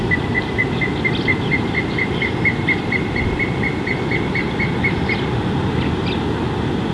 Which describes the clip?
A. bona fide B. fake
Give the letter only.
A